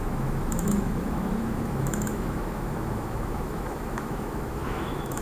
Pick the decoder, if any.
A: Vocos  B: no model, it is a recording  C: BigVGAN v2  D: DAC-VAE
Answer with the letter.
D